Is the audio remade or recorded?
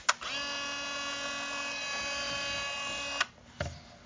recorded